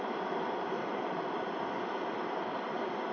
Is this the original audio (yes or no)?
yes